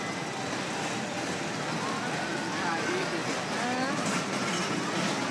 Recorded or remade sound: recorded